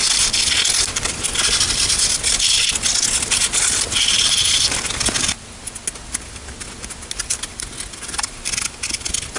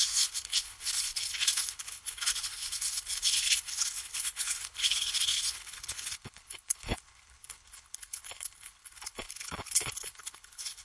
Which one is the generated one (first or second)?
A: second